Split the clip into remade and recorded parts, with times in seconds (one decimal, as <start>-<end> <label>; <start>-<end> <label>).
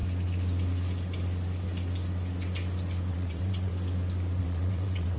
0.0-3.1 recorded; 3.1-3.7 remade; 3.7-4.4 recorded; 4.4-5.2 remade